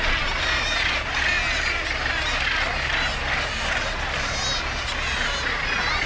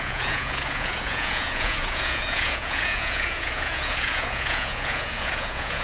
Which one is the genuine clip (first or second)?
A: first